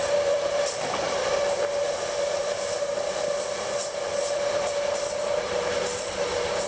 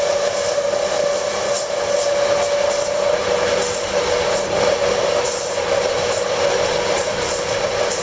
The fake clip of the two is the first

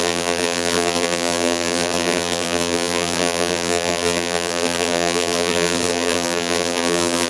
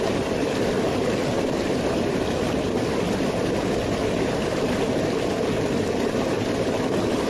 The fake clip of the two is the first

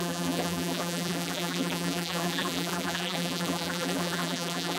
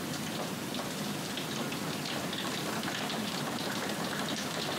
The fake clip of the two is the first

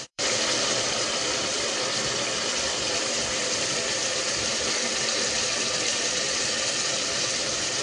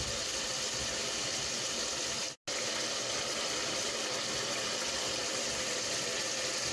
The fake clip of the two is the first